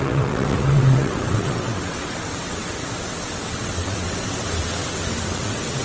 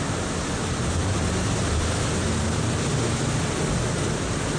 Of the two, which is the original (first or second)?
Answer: second